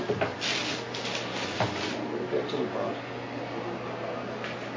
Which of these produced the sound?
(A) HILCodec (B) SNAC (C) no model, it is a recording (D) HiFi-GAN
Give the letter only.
C